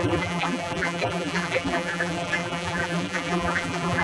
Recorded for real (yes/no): no